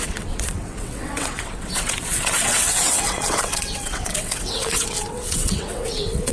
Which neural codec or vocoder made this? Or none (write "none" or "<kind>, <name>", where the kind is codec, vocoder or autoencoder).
vocoder, WaveNeXt